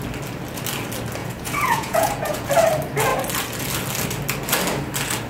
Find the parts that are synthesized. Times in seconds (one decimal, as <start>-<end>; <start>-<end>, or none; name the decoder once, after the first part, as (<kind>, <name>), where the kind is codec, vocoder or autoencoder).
1.2-2.5 (vocoder, Vocos)